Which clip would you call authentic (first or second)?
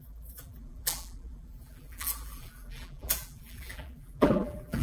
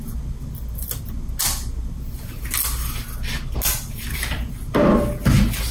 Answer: second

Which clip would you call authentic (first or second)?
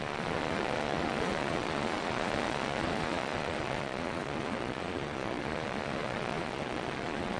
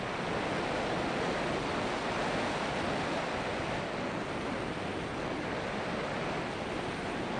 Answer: second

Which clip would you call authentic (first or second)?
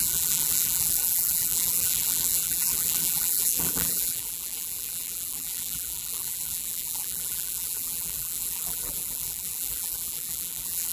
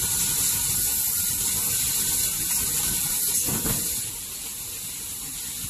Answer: second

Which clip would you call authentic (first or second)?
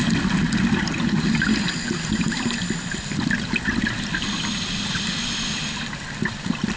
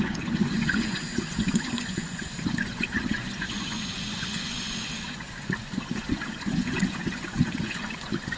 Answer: first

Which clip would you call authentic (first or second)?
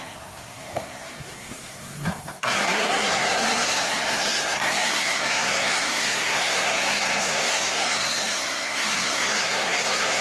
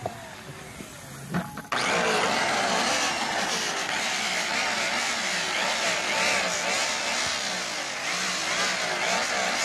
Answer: second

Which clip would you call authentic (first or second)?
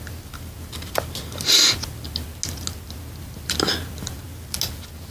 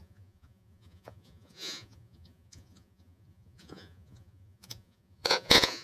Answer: first